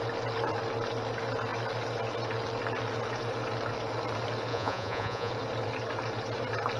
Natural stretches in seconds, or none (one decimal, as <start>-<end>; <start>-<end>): 0.0-4.5; 5.3-6.8